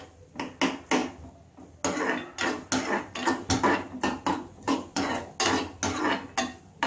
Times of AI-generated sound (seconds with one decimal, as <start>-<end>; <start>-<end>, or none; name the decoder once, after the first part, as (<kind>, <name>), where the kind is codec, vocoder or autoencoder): 4.3-5.2 (vocoder, Vocos)